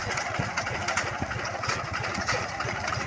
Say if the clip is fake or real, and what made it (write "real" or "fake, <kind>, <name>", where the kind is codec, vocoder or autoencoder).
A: fake, vocoder, Vocos